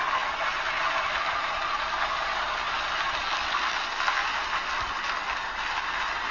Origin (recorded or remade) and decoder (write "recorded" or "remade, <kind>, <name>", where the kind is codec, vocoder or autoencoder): recorded